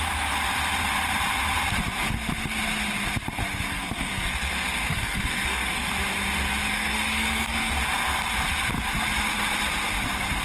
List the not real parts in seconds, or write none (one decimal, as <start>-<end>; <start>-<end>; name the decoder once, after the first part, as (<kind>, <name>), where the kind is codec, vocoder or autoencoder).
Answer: 3.7-5.9 (codec, SNAC); 6.7-7.7